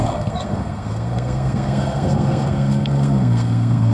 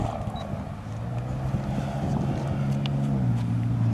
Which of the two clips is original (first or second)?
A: second